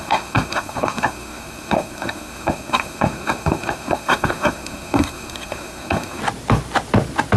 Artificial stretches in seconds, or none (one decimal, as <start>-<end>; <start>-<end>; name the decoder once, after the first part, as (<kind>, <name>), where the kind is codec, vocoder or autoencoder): 0.0-6.2 (codec, SNAC)